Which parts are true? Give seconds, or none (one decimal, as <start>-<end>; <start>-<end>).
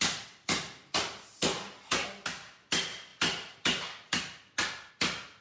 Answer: 0.0-5.4